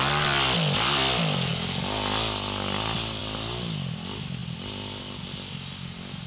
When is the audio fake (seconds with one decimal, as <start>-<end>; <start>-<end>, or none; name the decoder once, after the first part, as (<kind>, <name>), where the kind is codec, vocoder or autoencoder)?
none